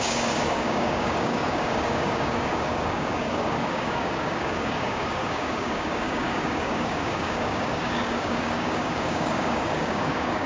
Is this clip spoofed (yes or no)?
yes